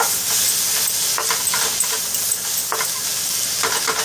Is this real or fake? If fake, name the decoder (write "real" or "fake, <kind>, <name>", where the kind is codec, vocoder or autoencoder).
real